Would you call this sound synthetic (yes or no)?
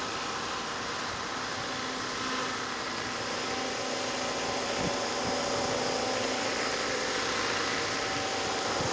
no